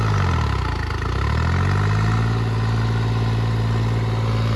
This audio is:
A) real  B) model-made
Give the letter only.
A